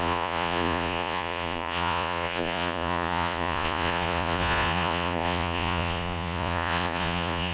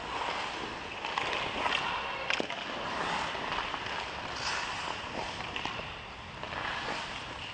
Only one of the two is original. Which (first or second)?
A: second